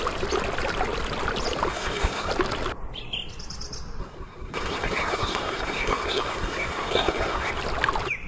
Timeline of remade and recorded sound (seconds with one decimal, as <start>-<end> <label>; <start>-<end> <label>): 0.0-1.7 recorded; 1.7-2.3 remade; 2.3-4.0 recorded; 4.0-7.5 remade; 7.5-8.3 recorded